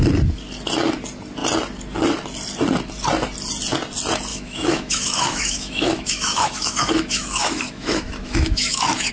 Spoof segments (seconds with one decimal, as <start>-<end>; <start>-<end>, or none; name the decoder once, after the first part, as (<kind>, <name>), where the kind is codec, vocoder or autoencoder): 4.3-9.1 (autoencoder, DAC-VAE)